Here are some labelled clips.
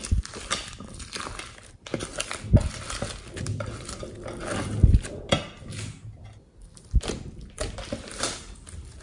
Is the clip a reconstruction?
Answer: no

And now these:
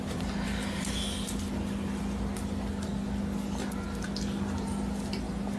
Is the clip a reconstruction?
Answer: no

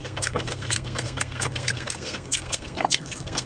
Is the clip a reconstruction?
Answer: yes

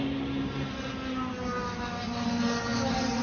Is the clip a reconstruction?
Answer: no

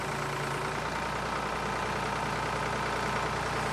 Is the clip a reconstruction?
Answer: no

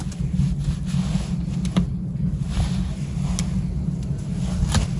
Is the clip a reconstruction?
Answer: no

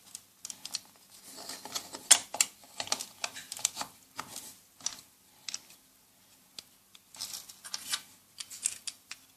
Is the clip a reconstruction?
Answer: no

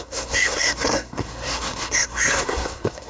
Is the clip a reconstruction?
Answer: yes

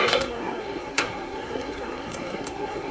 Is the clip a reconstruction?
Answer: yes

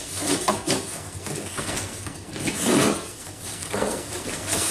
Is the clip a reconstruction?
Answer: yes